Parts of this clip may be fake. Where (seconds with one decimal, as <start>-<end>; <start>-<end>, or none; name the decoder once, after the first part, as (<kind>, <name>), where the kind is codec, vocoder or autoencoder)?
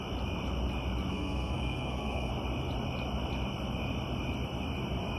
1.1-2.3 (codec, SNAC)